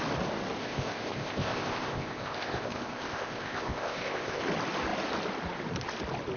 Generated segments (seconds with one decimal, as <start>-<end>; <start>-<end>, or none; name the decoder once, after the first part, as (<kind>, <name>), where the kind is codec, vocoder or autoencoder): 0.6-4.4 (codec, ZipCodec)